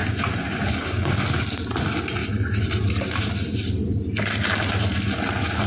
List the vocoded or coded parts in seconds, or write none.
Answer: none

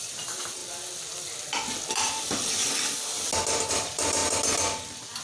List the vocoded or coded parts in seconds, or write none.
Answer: 0.0-0.6 (vocoder, BigVGAN v2); 3.7-4.2

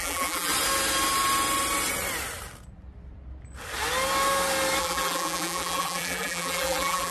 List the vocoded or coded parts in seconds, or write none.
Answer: 0.0-0.5 (vocoder, BigVGAN v2); 4.8-7.1

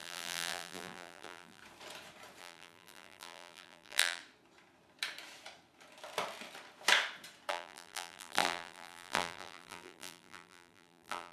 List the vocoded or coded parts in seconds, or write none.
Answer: 0.0-1.6 (vocoder, BigVGAN v2); 2.4-4.2; 7.5-11.3

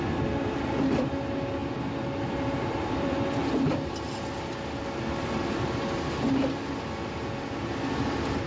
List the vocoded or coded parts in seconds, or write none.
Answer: 1.6-3.6 (vocoder, BigVGAN v2)

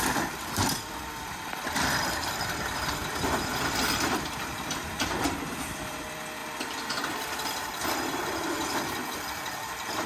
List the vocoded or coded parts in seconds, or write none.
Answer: 0.0-6.4 (vocoder, BigVGAN v2); 6.9-10.1